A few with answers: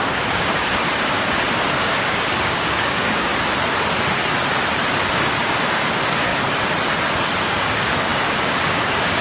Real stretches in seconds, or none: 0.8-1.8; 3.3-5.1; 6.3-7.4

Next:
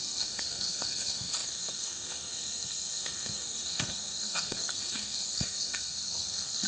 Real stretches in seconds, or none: none

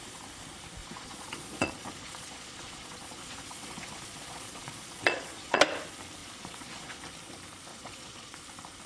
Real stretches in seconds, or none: 0.0-0.8; 5.6-6.2; 7.0-7.7; 8.4-8.9

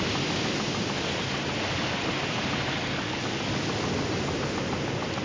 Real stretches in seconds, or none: 0.0-2.8; 3.5-5.2

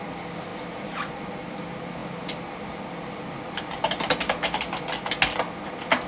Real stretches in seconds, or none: 0.0-6.1

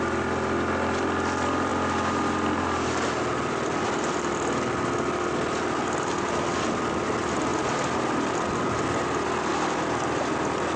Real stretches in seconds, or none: 0.0-9.5; 10.3-10.8